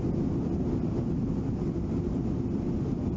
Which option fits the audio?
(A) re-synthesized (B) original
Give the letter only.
B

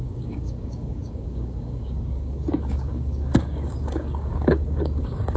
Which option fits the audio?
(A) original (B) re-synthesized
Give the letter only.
B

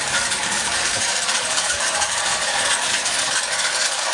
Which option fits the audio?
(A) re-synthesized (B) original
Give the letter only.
A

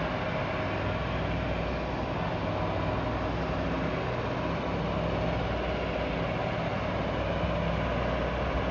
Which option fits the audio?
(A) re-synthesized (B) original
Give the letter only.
B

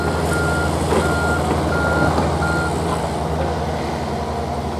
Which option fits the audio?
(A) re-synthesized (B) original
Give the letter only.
B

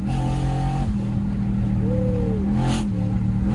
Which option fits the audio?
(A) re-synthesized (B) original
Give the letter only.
B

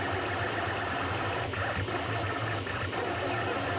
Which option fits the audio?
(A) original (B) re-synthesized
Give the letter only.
A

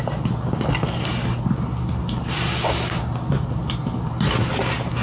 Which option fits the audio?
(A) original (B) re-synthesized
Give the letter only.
A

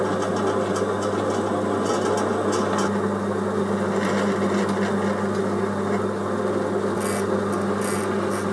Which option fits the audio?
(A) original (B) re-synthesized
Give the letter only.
A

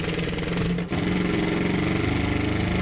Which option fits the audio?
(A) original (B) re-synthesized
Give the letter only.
A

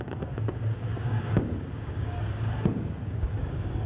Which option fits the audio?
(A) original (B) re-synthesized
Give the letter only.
B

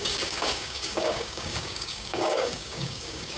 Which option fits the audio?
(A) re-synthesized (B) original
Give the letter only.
A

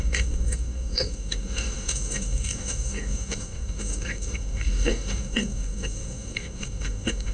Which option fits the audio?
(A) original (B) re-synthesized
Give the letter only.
B